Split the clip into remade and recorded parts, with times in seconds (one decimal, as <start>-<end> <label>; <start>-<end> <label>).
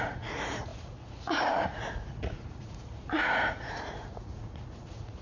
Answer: 0.0-5.2 remade